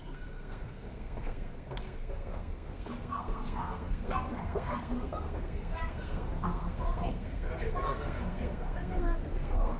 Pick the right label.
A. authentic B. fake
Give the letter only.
B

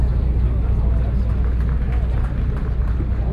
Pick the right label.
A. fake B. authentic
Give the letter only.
B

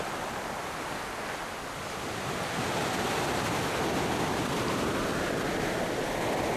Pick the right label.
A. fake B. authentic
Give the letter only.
B